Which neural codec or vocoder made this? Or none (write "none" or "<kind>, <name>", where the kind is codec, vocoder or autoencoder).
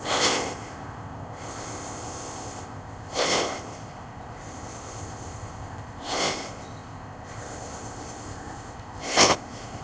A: codec, ZipCodec